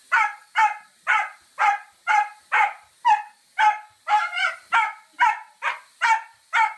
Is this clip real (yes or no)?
yes